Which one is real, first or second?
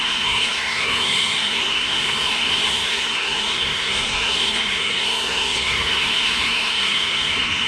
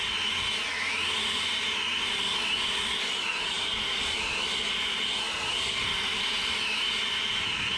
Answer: second